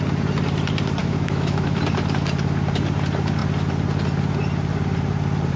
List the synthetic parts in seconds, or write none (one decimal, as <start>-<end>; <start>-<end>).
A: 1.0-1.8